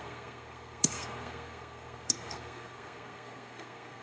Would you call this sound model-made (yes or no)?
yes